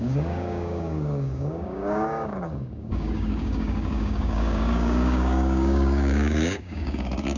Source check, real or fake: fake